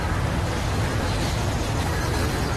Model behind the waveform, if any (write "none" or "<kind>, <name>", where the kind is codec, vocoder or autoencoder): none